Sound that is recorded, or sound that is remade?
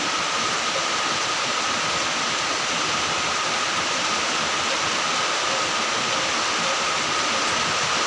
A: recorded